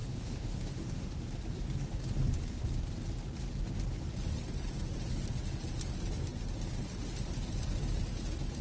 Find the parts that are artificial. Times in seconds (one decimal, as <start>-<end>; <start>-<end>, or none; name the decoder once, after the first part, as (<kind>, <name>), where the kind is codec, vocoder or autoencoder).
0.0-1.2 (autoencoder, DAC-VAE)